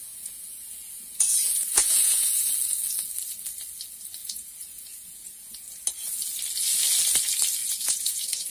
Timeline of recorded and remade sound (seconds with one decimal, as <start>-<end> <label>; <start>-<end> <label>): 0.0-2.5 remade; 2.5-4.2 recorded; 4.2-5.5 remade; 5.5-7.6 recorded; 7.6-8.5 remade